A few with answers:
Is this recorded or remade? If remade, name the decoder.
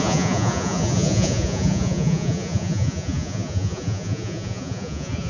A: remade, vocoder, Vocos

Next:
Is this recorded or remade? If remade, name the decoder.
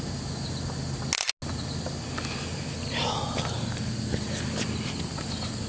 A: recorded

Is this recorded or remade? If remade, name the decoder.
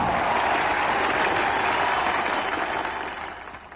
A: recorded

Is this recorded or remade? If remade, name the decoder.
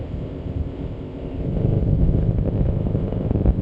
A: remade, codec, ZipCodec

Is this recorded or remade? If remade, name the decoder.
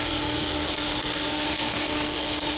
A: remade, codec, SNAC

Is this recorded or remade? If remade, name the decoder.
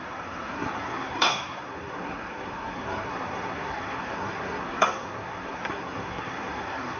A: remade, codec, SNAC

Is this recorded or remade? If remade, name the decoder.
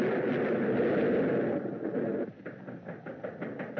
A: recorded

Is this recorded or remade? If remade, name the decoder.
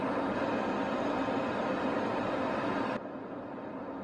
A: recorded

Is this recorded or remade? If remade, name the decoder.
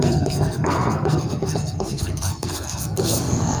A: remade, codec, SNAC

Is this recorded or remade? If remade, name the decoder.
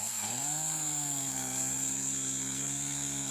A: remade, codec, SNAC